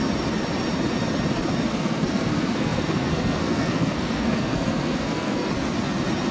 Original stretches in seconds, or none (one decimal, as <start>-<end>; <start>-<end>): 0.0-1.7; 5.5-6.3